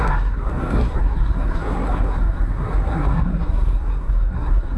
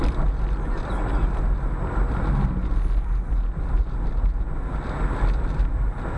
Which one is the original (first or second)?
second